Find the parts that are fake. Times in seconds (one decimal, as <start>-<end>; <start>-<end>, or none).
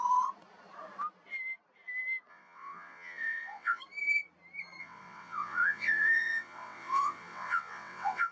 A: 2.3-3.8; 4.8-8.3